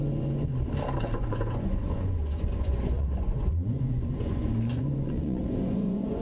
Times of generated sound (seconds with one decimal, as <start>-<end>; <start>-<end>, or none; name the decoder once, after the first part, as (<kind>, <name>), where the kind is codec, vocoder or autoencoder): 0.0-0.4 (vocoder, Vocos); 1.0-6.2